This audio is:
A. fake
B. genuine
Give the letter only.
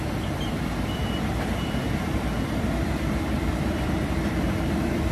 A